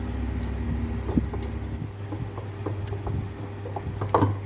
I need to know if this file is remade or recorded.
recorded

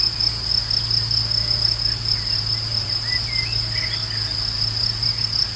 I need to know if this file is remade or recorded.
recorded